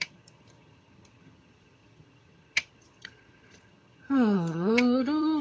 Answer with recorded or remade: remade